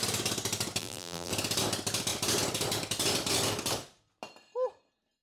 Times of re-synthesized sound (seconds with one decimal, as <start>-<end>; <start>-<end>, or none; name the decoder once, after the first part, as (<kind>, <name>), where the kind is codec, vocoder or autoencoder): 0.8-1.3 (vocoder, BigVGAN v2)